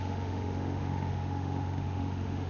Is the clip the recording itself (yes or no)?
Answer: no